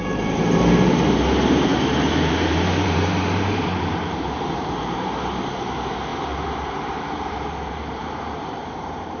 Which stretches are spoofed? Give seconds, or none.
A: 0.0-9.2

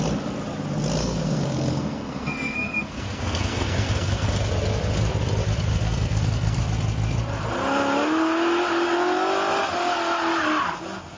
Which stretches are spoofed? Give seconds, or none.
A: 1.0-4.5; 5.7-6.6

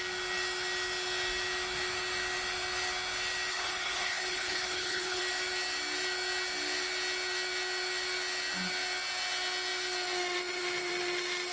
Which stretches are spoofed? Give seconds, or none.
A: 3.5-5.2